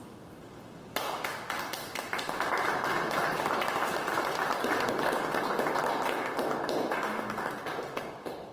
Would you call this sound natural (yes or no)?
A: yes